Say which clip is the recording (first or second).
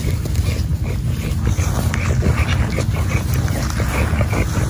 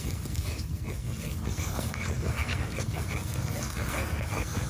first